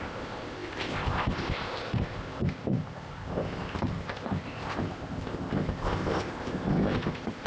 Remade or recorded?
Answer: remade